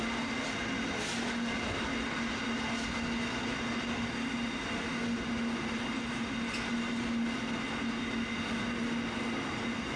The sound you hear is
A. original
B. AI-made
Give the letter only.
A